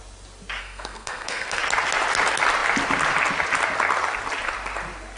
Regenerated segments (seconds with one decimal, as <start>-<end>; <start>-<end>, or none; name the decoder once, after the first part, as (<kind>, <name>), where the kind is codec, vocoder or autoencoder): 0.6-1.6 (codec, SNAC)